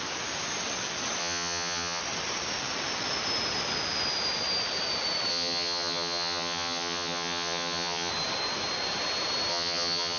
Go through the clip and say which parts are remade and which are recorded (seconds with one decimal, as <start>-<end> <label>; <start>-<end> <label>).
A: 0.0-1.2 recorded; 1.2-2.0 remade; 2.0-5.3 recorded; 5.3-8.1 remade; 8.1-9.5 recorded; 9.5-10.2 remade